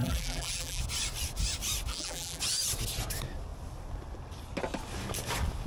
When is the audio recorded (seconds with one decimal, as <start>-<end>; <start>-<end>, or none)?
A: 0.8-1.9; 2.4-5.7

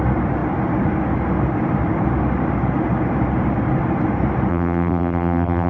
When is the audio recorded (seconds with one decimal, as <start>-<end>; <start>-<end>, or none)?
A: 0.0-4.5

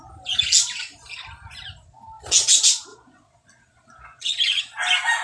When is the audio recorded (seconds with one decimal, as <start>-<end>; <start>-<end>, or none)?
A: 0.0-2.9; 4.6-5.2

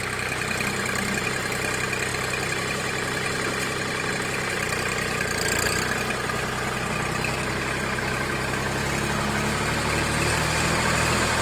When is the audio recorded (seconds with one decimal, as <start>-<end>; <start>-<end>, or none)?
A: 0.0-11.4

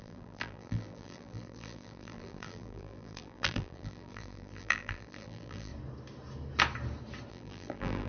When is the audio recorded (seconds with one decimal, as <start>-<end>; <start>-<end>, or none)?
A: 5.7-7.3

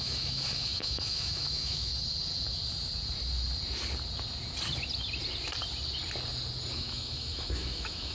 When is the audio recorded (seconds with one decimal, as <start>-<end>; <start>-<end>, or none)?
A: 1.9-6.7

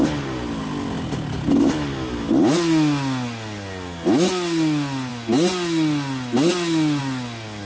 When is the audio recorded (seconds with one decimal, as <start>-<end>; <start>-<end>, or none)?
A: 0.0-7.7

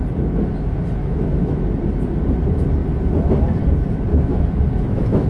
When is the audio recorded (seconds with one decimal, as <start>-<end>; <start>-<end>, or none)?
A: 0.0-1.0; 1.6-4.1